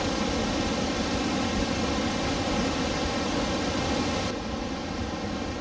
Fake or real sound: real